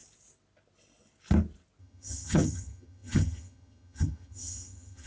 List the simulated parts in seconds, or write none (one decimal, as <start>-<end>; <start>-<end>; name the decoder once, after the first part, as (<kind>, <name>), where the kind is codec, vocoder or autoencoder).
1.8-5.1 (vocoder, HiFi-GAN)